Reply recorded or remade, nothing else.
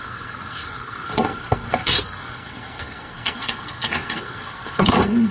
remade